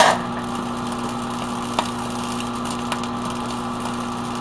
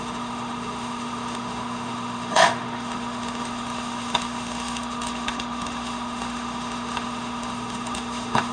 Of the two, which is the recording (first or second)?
first